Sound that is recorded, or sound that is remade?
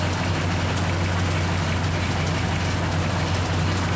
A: recorded